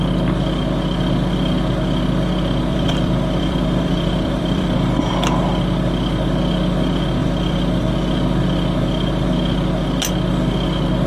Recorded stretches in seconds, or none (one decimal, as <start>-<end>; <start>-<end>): 0.0-2.7; 5.1-7.2; 7.9-11.1